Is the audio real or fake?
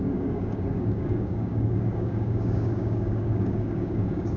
fake